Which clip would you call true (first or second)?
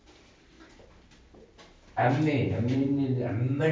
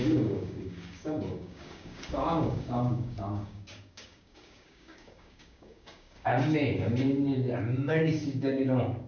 first